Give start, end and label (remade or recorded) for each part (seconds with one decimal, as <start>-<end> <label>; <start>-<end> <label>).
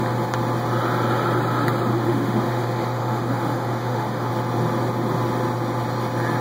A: 0.0-1.9 recorded; 1.9-4.3 remade; 4.3-6.4 recorded